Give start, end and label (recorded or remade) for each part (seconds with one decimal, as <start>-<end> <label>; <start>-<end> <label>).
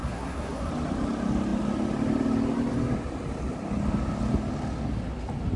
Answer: 0.0-0.7 remade; 0.7-5.6 recorded